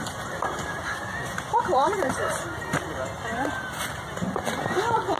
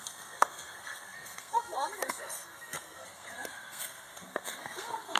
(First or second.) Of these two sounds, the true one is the first